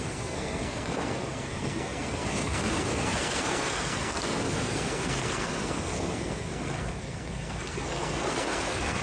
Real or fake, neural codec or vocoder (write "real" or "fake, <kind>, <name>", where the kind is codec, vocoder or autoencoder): fake, codec, SNAC